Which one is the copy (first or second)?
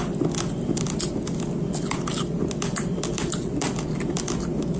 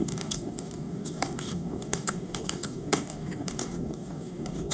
second